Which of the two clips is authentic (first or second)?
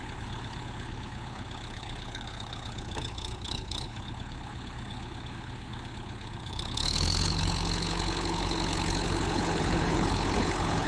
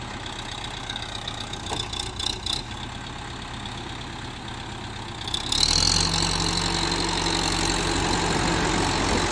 second